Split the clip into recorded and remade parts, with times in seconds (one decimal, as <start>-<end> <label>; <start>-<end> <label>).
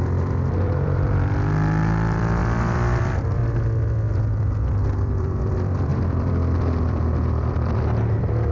0.0-3.4 remade; 3.4-4.1 recorded; 4.1-8.5 remade